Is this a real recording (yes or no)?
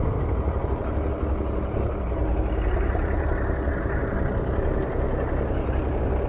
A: yes